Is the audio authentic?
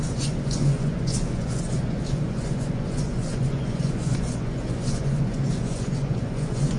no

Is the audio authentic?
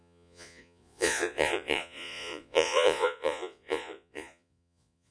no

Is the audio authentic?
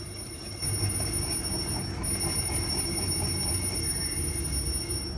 yes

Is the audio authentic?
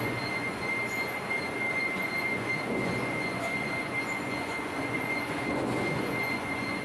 no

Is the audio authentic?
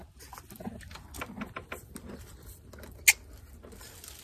yes